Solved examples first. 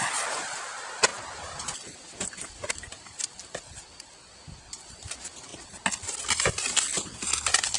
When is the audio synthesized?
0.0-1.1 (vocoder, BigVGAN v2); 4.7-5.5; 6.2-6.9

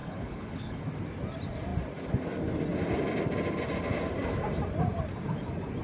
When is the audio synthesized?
0.0-0.8 (codec, HILCodec)

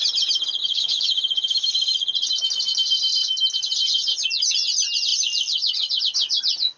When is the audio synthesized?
0.6-1.7 (autoencoder, DAC-VAE)

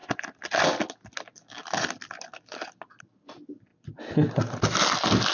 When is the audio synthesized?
none

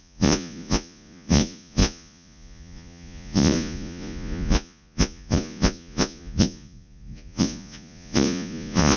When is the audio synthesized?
0.0-9.0 (vocoder, Vocos)